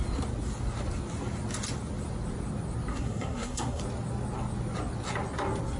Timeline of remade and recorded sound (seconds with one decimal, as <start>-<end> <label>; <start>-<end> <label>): 0.0-2.9 recorded; 2.9-3.8 remade; 3.8-5.8 recorded